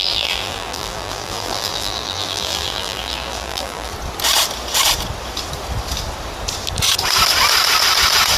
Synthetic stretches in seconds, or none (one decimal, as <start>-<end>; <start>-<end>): 0.0-3.9